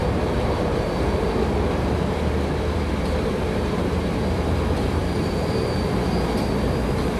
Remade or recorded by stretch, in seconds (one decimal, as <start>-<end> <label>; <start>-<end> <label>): 0.0-5.0 remade; 5.0-6.5 recorded; 6.5-7.2 remade